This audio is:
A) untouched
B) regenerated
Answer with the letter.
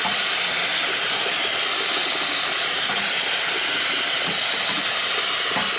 A